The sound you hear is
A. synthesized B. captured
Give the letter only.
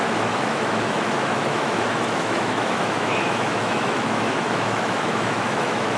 A